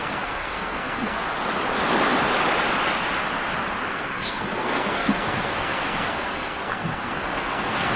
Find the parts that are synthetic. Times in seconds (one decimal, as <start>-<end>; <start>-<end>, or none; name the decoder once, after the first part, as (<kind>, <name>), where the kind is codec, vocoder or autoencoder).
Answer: 0.0-1.2 (codec, SNAC); 3.9-8.0